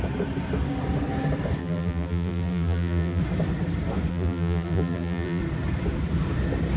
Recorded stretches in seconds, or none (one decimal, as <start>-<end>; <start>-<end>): 0.0-1.6; 3.2-4.1; 5.4-6.8